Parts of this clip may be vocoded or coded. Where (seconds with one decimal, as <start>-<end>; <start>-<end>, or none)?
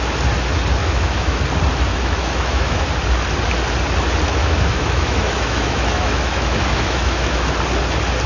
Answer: 0.8-1.4; 1.9-2.9; 4.4-7.5